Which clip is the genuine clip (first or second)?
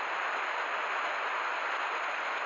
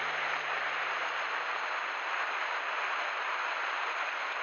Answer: first